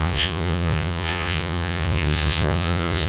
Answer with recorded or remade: remade